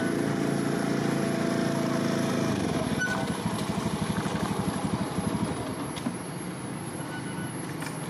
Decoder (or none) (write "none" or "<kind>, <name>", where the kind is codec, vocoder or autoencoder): none